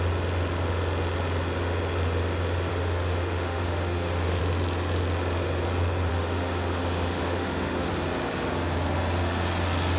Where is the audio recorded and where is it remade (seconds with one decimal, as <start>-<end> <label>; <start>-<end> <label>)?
0.0-2.7 recorded; 2.7-4.4 remade; 4.4-6.1 recorded; 6.1-7.9 remade; 7.9-10.0 recorded